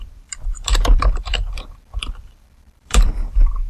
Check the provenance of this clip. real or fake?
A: fake